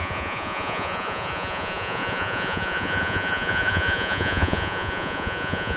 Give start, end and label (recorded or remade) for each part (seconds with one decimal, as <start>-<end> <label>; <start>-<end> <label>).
0.0-5.8 remade